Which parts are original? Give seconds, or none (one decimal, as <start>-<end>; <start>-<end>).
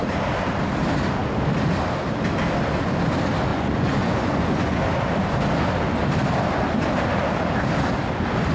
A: 0.0-3.5; 4.8-8.5